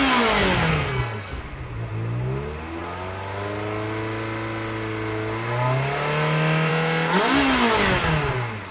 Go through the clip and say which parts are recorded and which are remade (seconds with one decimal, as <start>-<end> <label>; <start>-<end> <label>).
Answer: 0.0-0.7 recorded; 0.7-1.4 remade; 1.4-8.7 recorded